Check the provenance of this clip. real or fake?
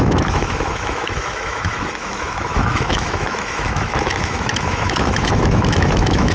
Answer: fake